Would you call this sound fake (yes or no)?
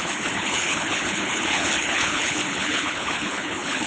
yes